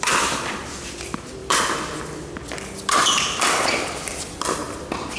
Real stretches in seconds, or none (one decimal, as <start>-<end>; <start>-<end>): 0.0-5.2